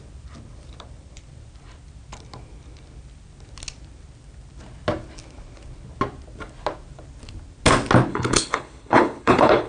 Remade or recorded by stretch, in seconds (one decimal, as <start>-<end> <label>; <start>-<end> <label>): 0.0-8.1 recorded; 8.1-9.7 remade